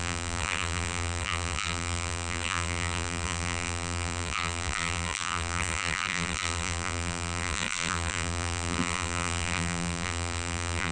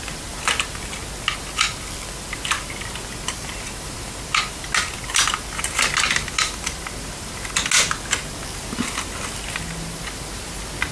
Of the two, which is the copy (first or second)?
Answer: first